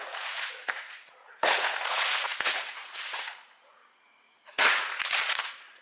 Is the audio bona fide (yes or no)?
no